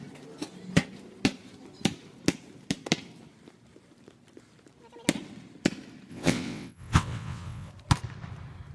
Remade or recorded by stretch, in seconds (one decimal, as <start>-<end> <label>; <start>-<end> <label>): 0.0-6.1 recorded; 6.1-7.7 remade; 7.7-8.7 recorded